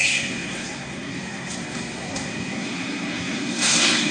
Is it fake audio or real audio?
fake